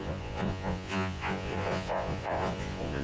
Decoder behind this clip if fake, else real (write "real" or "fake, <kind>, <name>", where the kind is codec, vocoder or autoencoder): fake, vocoder, Vocos